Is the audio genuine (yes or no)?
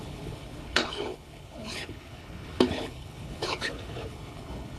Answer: no